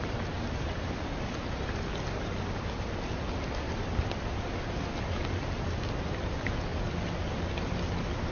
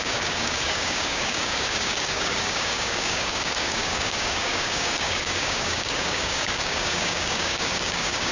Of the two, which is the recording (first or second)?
first